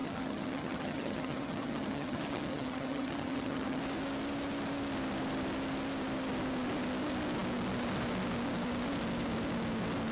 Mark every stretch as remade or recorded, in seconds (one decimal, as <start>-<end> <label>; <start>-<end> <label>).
0.0-3.8 remade; 3.8-10.1 recorded